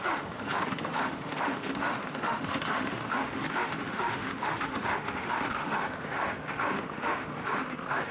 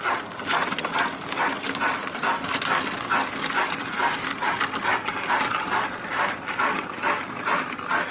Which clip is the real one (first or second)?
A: second